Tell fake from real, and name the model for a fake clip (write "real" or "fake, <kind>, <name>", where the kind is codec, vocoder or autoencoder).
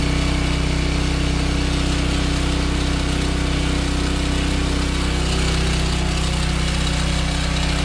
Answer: real